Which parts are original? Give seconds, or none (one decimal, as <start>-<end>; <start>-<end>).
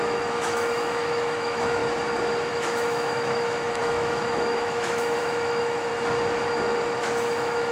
1.8-2.5; 5.9-7.0